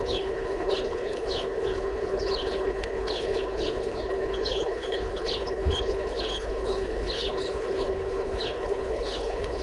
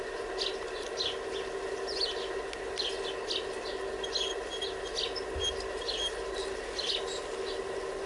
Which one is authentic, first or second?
second